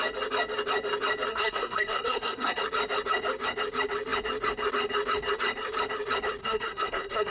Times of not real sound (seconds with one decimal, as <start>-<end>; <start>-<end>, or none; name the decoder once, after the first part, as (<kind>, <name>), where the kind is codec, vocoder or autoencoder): 1.3-2.6 (codec, SNAC); 6.4-7.3